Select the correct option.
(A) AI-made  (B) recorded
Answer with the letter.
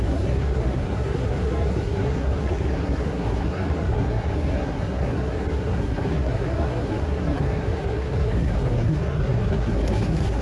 A